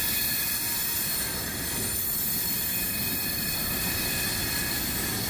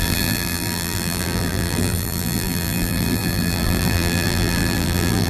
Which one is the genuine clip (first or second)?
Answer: first